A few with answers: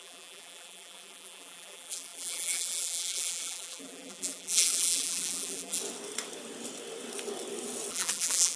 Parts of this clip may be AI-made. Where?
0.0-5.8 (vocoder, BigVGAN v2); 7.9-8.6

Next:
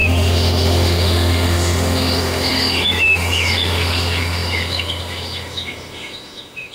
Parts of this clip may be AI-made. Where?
0.0-6.7 (autoencoder, DAC-VAE)